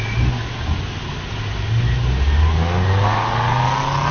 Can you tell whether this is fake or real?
real